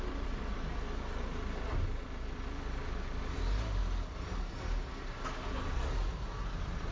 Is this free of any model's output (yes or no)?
yes